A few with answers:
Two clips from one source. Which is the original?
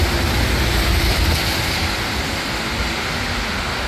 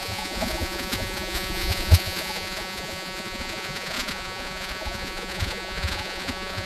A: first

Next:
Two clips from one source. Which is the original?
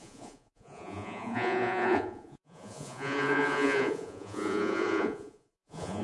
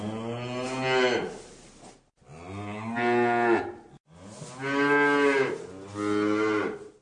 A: second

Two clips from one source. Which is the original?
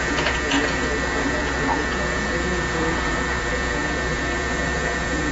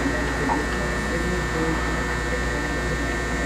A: second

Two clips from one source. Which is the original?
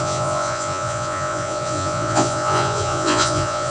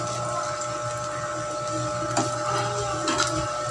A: second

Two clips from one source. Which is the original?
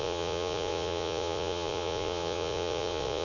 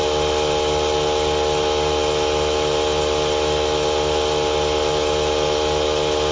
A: second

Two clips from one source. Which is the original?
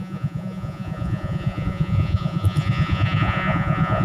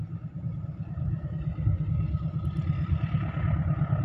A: second